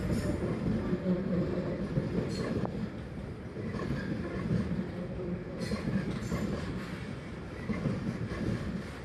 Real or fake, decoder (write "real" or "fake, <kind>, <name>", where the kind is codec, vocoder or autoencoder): real